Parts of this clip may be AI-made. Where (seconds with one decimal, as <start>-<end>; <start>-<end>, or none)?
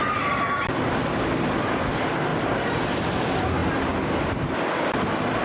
1.1-1.8; 2.3-3.1